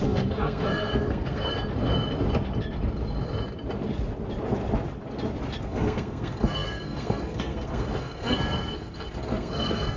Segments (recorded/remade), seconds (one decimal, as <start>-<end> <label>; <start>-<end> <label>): 0.0-1.5 remade; 1.5-5.6 recorded; 5.6-10.0 remade